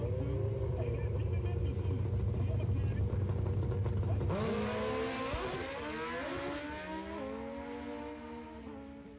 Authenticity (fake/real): real